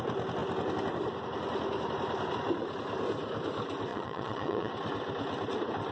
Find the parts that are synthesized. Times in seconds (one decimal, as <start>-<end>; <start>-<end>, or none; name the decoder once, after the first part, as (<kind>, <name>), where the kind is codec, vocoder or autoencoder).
3.9-4.7 (vocoder, WaveNeXt)